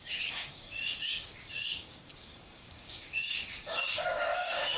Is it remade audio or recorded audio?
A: remade